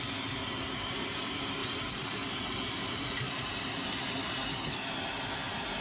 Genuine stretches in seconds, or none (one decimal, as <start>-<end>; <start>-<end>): 0.0-5.8